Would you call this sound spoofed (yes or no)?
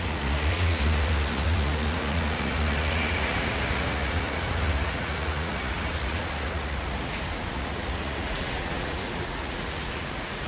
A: yes